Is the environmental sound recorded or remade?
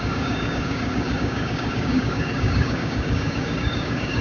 remade